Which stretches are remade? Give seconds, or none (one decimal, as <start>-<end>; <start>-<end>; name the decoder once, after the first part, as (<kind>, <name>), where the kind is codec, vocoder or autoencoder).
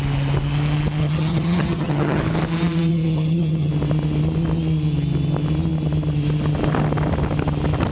1.0-2.2 (vocoder, HiFi-GAN); 2.9-3.7